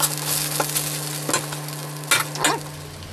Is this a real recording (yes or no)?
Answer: yes